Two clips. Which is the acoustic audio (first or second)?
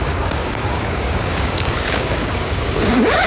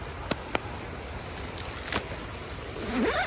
second